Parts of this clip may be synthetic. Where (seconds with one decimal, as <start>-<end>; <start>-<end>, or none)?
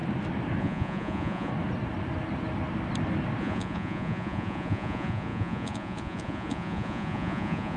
0.6-1.5; 3.4-7.8